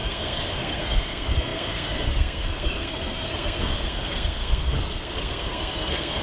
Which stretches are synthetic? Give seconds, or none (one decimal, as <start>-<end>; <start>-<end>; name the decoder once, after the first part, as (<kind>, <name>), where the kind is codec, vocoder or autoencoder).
0.0-6.2 (codec, SNAC)